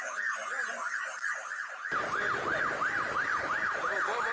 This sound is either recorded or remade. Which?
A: recorded